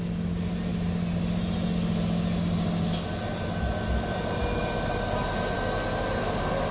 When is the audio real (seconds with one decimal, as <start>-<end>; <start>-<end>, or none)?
0.0-6.7